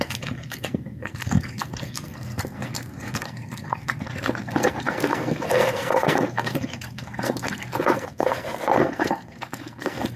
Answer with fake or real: fake